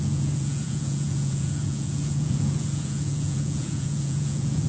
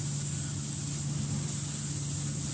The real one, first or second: second